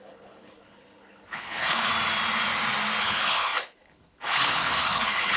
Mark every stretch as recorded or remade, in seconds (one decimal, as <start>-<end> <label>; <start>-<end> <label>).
0.0-1.9 remade; 1.9-3.0 recorded; 3.0-5.4 remade